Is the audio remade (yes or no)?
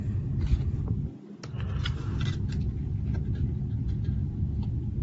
no